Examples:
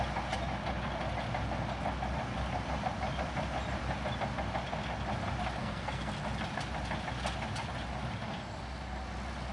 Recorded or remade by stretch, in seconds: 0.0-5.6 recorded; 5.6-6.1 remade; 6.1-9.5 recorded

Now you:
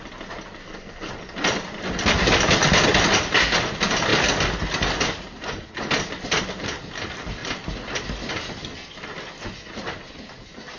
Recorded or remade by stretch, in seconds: 0.0-0.6 recorded; 0.6-1.1 remade; 1.1-10.8 recorded